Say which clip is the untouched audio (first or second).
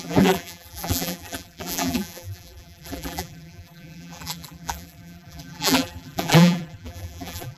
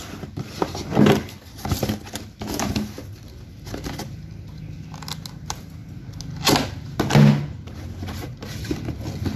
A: second